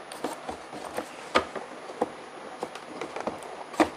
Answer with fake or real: real